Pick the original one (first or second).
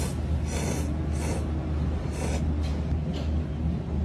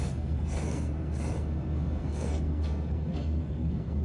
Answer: first